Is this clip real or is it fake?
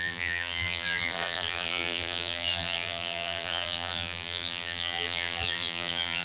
fake